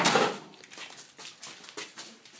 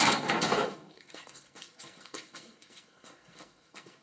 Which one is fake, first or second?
second